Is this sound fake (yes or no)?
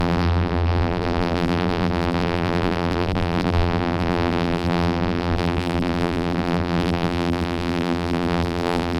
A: yes